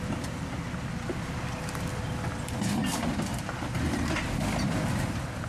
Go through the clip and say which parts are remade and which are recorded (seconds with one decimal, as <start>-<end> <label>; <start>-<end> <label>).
0.0-2.8 recorded; 2.8-4.3 remade; 4.3-5.5 recorded